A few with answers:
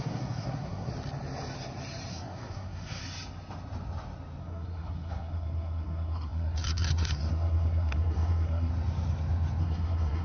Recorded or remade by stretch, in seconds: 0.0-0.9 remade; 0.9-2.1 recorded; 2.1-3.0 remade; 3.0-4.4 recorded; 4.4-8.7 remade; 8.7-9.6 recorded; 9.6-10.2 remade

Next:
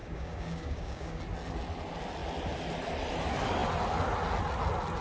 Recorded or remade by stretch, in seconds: 0.0-1.2 remade; 1.2-5.0 recorded

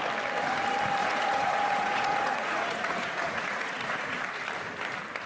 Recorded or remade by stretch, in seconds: 0.0-1.0 recorded; 1.0-4.2 remade; 4.2-5.3 recorded

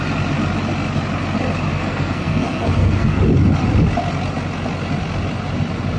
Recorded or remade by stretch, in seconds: 0.0-1.7 recorded; 1.7-3.2 remade; 3.2-6.0 recorded

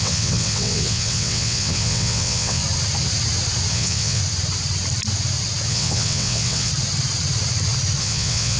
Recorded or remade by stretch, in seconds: 0.0-2.6 remade; 2.6-3.7 recorded; 3.7-4.2 remade; 4.2-5.7 recorded; 5.7-6.7 remade; 6.7-8.0 recorded; 8.0-8.6 remade

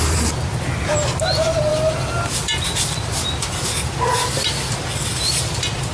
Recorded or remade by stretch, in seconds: 0.0-1.7 recorded; 1.7-3.1 remade; 3.1-4.9 recorded; 4.9-5.4 remade; 5.4-5.9 recorded

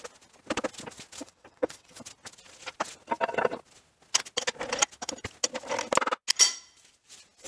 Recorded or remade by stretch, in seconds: 0.0-1.2 recorded; 1.2-2.0 remade; 2.0-7.5 recorded

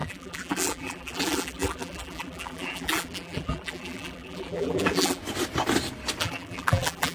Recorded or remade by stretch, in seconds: 0.0-5.2 remade; 5.2-6.2 recorded; 6.2-7.1 remade